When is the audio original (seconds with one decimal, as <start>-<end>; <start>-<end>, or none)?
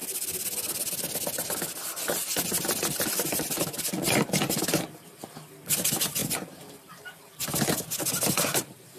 0.0-9.0